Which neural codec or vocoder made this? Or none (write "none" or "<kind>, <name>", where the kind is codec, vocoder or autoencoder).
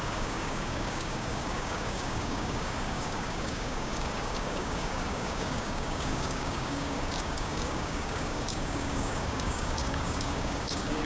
codec, DAC